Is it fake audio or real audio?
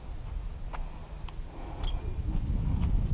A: real